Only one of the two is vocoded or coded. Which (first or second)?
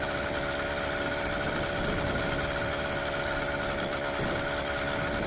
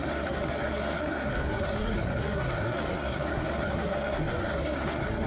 second